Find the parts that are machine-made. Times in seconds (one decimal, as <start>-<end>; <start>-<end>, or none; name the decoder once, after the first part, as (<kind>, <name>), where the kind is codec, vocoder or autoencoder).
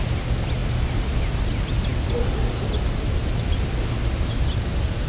0.6-1.4 (vocoder, BigVGAN v2)